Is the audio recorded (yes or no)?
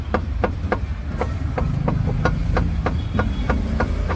yes